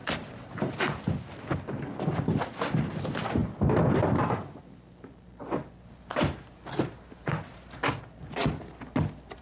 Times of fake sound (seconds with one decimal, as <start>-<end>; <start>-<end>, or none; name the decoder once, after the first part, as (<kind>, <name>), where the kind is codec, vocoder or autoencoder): none